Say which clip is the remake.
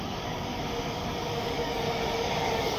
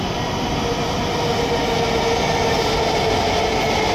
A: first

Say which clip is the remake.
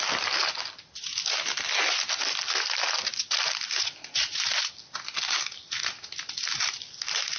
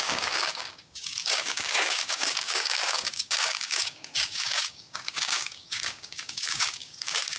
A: second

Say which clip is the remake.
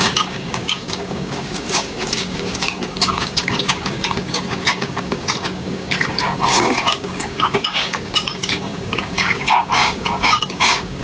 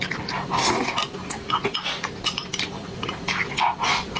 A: first